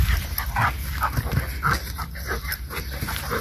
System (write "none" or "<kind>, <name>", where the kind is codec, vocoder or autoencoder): none